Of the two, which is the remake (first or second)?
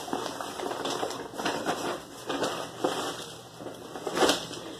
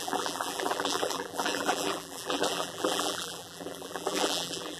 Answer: second